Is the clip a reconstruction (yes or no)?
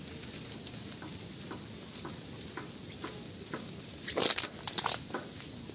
no